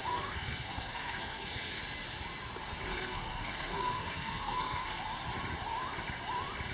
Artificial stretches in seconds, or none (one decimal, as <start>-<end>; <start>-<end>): 0.0-1.8; 2.9-5.0